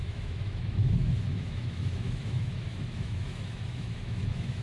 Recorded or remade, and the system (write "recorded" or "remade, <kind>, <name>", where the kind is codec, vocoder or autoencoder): remade, autoencoder, DAC-VAE